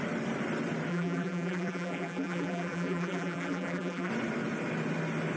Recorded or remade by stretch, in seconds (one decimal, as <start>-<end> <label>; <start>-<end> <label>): 0.0-0.9 recorded; 0.9-4.1 remade; 4.1-5.4 recorded